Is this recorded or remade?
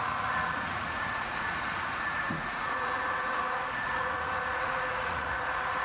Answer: remade